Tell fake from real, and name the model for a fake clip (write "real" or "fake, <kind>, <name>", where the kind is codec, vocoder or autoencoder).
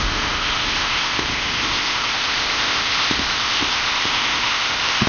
fake, codec, ZipCodec